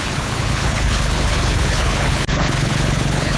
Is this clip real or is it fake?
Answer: fake